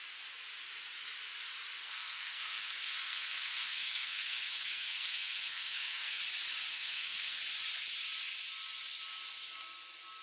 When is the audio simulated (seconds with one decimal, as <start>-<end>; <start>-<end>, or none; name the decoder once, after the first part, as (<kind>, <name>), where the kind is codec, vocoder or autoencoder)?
1.8-6.2 (codec, SNAC); 6.7-7.4